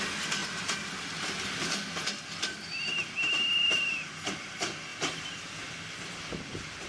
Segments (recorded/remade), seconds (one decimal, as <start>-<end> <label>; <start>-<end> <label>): 0.0-6.9 recorded